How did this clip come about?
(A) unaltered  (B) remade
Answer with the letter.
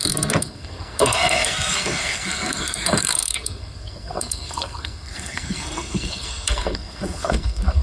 B